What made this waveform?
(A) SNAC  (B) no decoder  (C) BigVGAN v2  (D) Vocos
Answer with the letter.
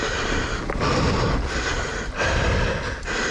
B